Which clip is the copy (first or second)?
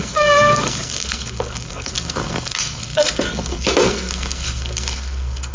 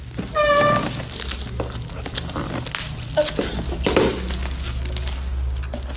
first